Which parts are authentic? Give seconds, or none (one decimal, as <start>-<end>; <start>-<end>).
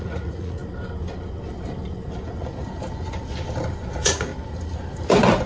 0.6-3.9; 4.3-5.5